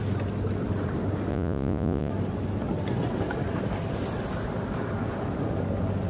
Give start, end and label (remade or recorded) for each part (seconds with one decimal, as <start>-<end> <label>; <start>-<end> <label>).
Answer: 0.0-1.3 recorded; 1.3-2.1 remade; 2.1-6.1 recorded